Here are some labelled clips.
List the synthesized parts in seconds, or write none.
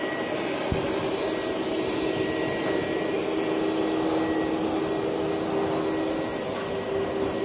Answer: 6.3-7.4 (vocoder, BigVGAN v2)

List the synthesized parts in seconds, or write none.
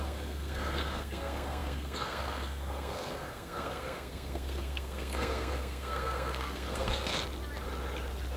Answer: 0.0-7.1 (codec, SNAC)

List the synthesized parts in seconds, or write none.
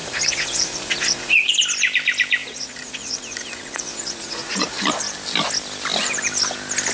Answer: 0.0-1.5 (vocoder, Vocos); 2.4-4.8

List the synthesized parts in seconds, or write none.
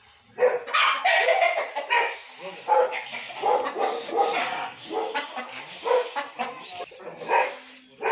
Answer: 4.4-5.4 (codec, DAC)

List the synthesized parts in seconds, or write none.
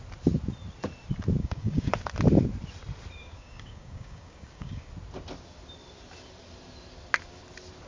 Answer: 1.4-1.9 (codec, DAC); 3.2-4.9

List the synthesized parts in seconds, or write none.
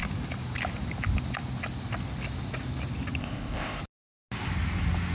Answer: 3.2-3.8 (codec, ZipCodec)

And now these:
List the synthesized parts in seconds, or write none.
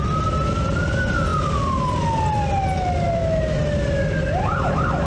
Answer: none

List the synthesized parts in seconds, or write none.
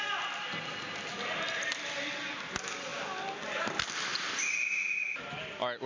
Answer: none